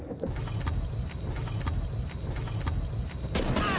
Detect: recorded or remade recorded